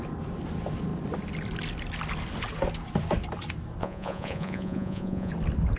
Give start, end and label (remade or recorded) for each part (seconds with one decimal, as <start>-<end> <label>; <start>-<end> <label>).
0.0-3.8 recorded; 3.8-5.3 remade; 5.3-5.8 recorded